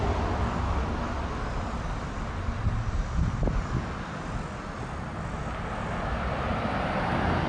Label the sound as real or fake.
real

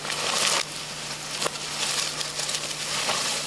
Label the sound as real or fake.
fake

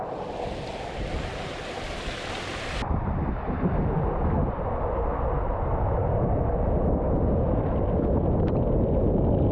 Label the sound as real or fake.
real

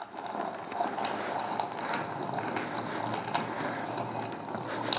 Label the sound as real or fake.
real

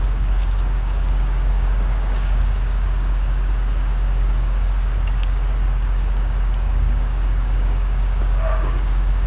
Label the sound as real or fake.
fake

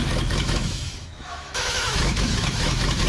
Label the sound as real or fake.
fake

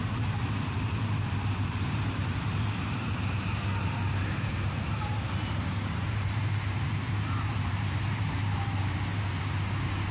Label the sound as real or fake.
fake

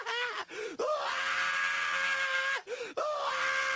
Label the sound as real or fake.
real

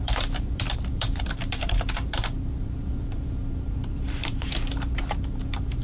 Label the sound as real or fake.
fake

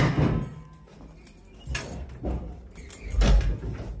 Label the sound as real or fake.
real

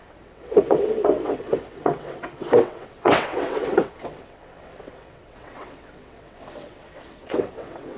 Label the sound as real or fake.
fake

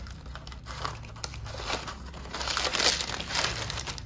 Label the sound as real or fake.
real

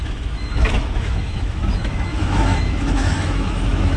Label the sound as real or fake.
fake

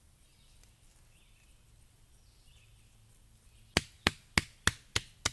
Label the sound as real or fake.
real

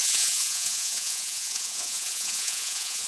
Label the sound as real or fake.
fake